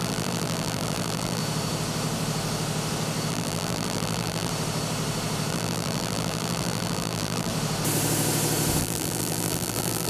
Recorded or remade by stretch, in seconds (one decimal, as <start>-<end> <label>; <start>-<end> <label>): 0.0-1.4 remade; 1.4-3.3 recorded; 3.3-4.5 remade; 4.5-5.5 recorded; 5.5-7.5 remade; 7.5-8.8 recorded; 8.8-10.1 remade